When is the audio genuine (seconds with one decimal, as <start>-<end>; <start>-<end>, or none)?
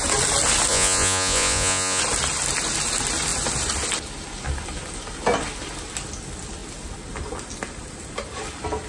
0.0-0.7; 2.0-8.9